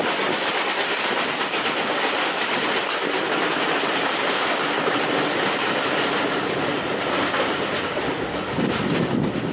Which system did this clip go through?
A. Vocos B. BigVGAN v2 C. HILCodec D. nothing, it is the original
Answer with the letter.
D